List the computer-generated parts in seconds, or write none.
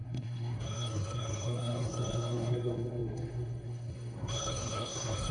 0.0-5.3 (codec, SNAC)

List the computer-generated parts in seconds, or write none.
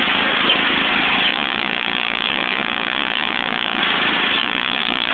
1.3-3.8 (vocoder, Vocos); 4.4-5.1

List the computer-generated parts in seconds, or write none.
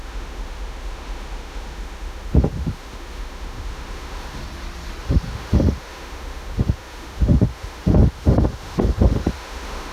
0.0-4.4 (autoencoder, DAC-VAE); 5.0-9.9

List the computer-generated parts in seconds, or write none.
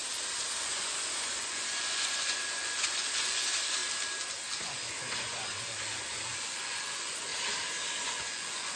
0.6-3.8 (vocoder, Vocos); 4.6-7.3; 8.0-8.8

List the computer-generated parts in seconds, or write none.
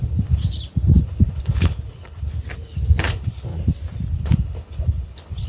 0.0-0.4 (codec, HILCodec); 1.0-2.3; 3.1-3.5; 4.1-5.5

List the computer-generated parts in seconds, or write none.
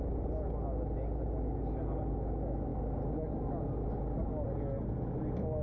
none